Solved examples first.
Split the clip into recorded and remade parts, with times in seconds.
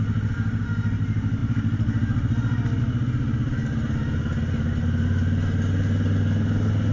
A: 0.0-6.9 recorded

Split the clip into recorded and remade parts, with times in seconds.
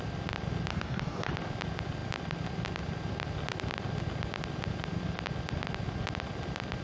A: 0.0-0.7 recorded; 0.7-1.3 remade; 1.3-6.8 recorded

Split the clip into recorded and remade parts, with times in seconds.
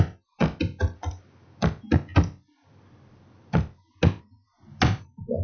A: 0.0-5.4 recorded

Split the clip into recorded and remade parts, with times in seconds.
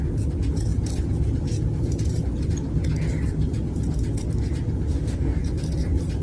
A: 0.0-4.9 recorded; 4.9-5.4 remade; 5.4-6.2 recorded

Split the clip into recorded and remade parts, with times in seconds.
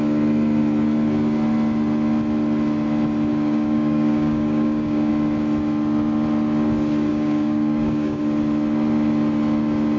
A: 0.0-3.3 recorded; 3.3-5.1 remade; 5.1-7.1 recorded; 7.1-8.2 remade; 8.2-10.0 recorded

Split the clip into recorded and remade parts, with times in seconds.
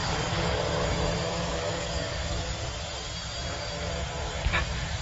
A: 0.0-0.8 remade; 0.8-1.3 recorded; 1.3-2.4 remade; 2.4-5.0 recorded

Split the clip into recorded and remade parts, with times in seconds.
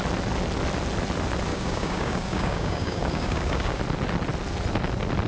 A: 0.0-1.5 recorded; 1.5-3.8 remade; 3.8-5.3 recorded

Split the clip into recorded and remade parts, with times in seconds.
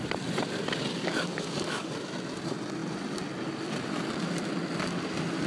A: 0.0-0.9 recorded; 0.9-1.9 remade; 1.9-5.5 recorded